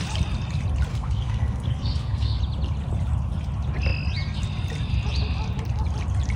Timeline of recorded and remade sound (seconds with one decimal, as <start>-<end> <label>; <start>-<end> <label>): 0.0-0.9 recorded; 0.9-2.4 remade; 2.4-6.4 recorded